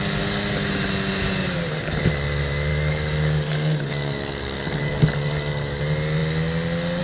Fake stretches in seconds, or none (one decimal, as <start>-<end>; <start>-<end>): 2.7-5.8